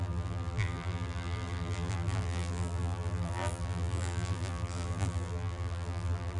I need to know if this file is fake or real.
fake